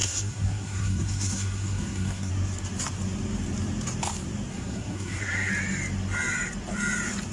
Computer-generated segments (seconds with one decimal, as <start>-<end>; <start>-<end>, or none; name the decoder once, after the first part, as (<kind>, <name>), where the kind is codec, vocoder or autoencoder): 0.0-2.3 (codec, SNAC); 4.5-5.5